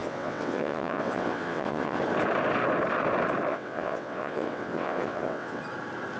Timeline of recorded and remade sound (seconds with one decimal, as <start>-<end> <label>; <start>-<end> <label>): 0.0-2.0 remade; 2.0-3.5 recorded; 3.5-5.6 remade; 5.6-6.2 recorded